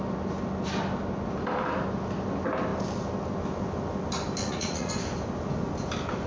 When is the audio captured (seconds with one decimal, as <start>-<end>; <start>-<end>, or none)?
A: 0.0-4.4; 4.9-6.3